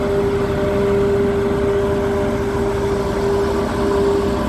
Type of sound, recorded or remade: recorded